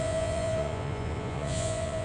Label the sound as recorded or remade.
remade